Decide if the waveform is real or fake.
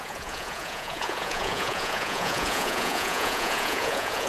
fake